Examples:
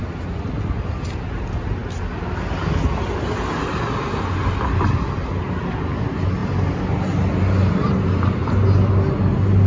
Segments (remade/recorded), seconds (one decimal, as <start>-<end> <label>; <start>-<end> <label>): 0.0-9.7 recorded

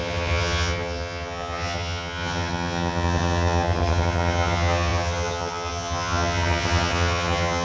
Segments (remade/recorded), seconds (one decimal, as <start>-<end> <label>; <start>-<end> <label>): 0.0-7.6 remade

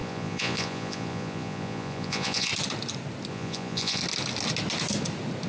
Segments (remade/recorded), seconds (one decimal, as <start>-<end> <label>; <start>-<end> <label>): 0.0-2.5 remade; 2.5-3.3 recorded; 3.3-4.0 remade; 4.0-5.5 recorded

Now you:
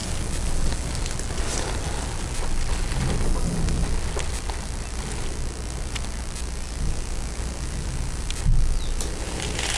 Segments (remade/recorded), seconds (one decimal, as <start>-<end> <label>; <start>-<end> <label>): 0.0-9.8 recorded

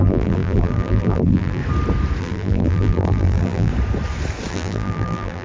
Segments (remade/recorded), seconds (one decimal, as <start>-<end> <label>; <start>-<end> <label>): 0.0-1.6 remade; 1.6-2.2 recorded; 2.2-3.7 remade; 3.7-4.5 recorded; 4.5-5.4 remade

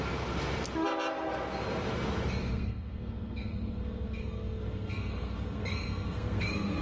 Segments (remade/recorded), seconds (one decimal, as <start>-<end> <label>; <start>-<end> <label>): 0.0-2.4 recorded; 2.4-6.8 remade

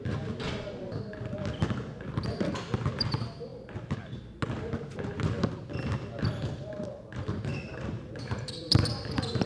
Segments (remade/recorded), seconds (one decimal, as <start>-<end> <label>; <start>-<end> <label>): 0.0-9.5 recorded